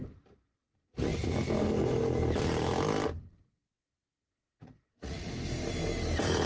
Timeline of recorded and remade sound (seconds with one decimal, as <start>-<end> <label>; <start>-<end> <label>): 0.0-4.2 recorded; 4.2-5.3 remade; 5.3-6.5 recorded